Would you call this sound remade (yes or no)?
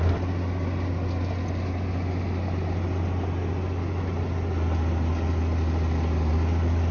no